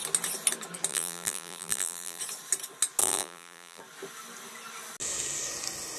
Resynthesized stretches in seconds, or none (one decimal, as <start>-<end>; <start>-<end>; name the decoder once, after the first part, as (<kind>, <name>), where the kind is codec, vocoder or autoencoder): 0.9-2.2 (vocoder, BigVGAN v2); 3.0-3.8